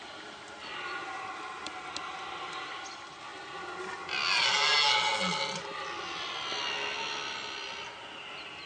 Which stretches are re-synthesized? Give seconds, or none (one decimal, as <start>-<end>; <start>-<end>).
none